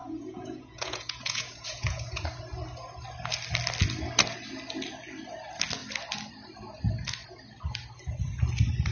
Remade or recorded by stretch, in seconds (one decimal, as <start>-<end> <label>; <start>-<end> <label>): 0.0-2.2 remade; 2.2-8.9 recorded